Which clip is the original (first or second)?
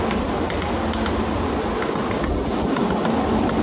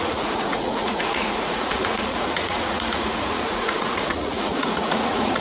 first